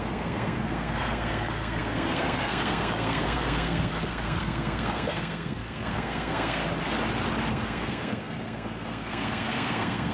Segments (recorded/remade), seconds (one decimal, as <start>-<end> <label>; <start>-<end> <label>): 0.0-6.6 remade; 6.6-7.5 recorded; 7.5-10.1 remade